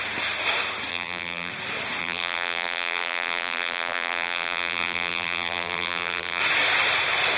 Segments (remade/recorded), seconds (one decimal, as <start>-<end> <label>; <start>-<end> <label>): 0.0-0.9 recorded; 0.9-1.5 remade; 1.5-2.0 recorded; 2.0-6.4 remade; 6.4-7.4 recorded